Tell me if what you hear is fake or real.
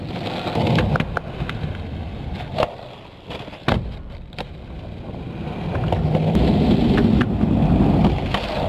real